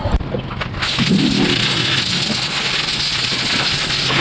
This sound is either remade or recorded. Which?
recorded